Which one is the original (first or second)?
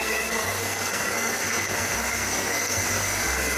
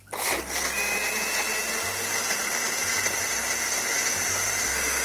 second